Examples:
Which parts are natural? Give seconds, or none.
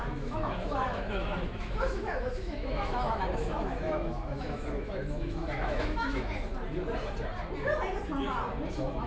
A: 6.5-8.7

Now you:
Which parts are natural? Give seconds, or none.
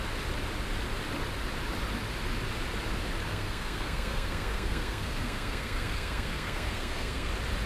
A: 0.0-3.3; 7.3-7.7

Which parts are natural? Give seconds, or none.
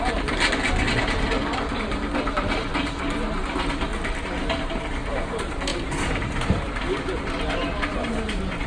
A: 0.0-5.7; 7.7-8.7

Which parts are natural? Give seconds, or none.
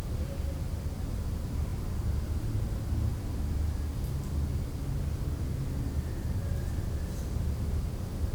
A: 0.0-8.3